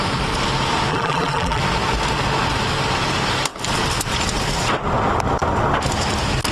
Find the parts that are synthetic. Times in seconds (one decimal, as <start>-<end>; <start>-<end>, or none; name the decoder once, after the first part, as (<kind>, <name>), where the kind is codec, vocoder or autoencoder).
0.9-1.6 (vocoder, BigVGAN v2)